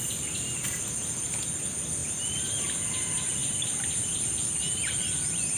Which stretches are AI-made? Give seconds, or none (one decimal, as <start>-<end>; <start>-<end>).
none